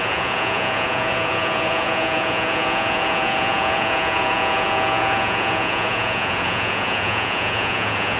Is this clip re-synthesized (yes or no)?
yes